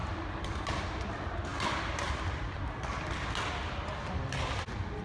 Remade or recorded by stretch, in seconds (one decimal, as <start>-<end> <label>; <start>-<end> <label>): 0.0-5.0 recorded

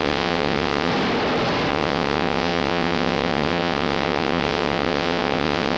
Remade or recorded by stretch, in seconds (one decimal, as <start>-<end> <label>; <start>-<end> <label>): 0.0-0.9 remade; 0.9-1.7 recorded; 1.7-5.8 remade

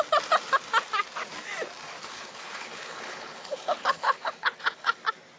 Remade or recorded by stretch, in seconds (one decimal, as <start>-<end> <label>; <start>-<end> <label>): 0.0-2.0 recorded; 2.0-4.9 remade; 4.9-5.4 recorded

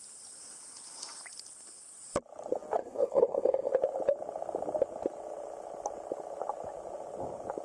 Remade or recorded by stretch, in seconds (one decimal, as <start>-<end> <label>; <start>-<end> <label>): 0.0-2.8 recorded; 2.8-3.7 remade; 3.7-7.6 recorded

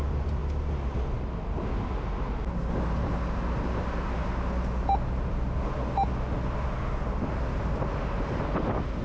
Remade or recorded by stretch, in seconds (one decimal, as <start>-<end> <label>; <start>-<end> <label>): 0.0-9.0 recorded